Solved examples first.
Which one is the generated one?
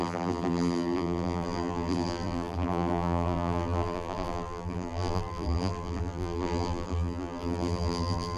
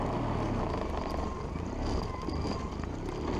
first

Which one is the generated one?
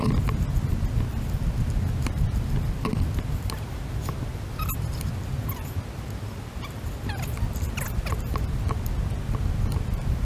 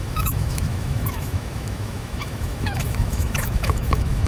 second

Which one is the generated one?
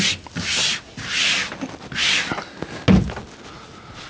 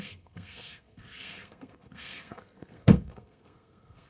second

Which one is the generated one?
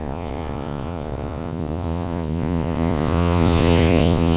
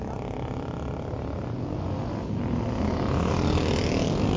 first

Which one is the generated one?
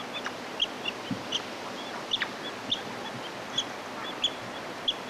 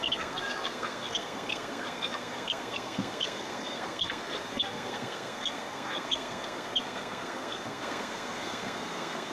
second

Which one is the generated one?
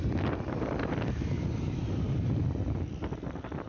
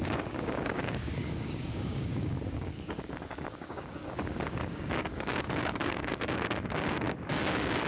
second